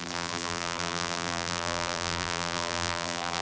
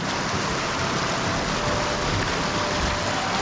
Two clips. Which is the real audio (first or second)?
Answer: second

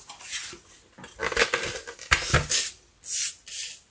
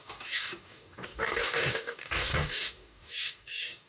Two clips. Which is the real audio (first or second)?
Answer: first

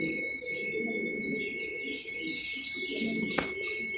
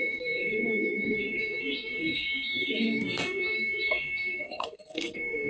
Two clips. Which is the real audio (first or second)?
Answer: first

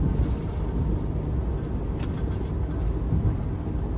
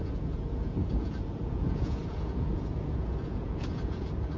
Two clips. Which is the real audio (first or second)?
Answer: first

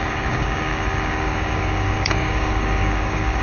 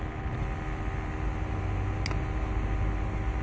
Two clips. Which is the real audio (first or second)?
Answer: second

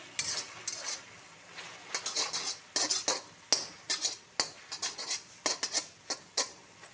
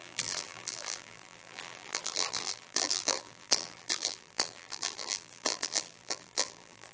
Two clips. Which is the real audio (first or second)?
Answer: first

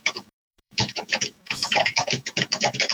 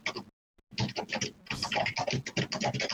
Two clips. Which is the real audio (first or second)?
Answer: second